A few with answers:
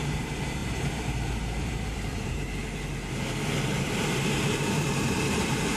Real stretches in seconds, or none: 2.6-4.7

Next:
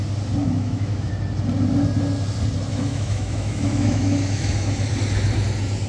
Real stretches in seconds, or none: 0.0-0.4; 1.1-2.7; 4.9-5.9